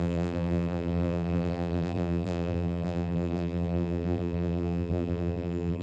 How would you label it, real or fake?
fake